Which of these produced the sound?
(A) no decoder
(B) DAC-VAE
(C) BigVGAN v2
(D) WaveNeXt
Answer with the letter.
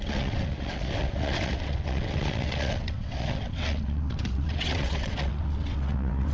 D